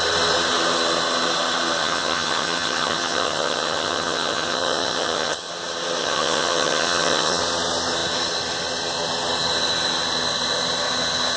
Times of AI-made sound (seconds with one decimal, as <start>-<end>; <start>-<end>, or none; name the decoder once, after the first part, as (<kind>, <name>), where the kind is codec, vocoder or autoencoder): 1.8-5.5 (vocoder, HiFi-GAN); 6.0-7.4